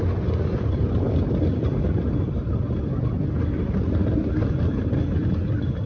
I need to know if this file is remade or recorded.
recorded